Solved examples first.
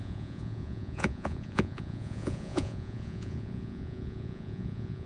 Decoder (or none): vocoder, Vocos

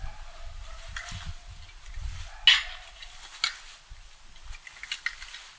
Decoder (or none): none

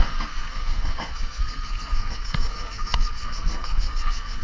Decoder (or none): codec, SNAC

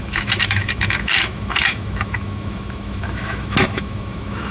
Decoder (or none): autoencoder, DAC-VAE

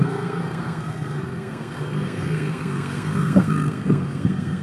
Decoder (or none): codec, SNAC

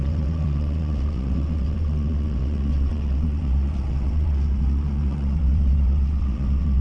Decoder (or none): vocoder, WaveNeXt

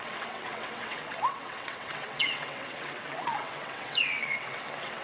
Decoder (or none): vocoder, WaveNeXt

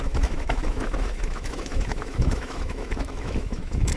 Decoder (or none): autoencoder, DAC-VAE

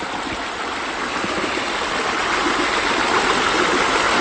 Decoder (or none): none